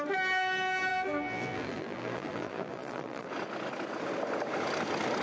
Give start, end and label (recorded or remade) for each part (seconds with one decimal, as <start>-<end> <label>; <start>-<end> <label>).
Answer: 0.0-0.9 recorded; 0.9-3.3 remade; 3.3-5.2 recorded

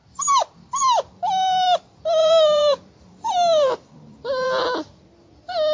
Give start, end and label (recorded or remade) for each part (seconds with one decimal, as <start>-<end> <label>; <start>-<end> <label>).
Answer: 0.0-2.2 recorded; 2.2-4.6 remade; 4.6-5.7 recorded

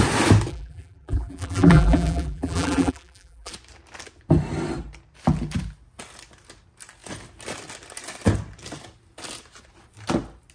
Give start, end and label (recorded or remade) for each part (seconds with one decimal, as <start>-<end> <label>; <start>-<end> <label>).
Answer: 0.0-0.5 recorded; 0.5-3.5 remade; 3.5-10.5 recorded

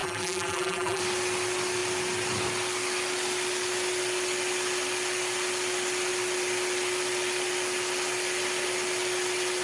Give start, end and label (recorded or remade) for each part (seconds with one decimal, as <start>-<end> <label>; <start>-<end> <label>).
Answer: 0.0-1.0 remade; 1.0-9.6 recorded